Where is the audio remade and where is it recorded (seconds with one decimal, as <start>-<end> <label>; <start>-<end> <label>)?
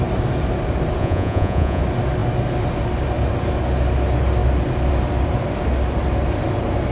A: 0.0-1.0 recorded; 1.0-1.8 remade; 1.8-6.9 recorded